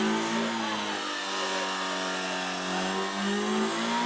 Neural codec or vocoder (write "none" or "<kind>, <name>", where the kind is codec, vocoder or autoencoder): none